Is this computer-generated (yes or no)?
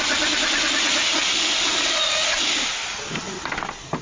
no